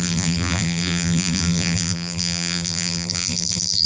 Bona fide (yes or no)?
no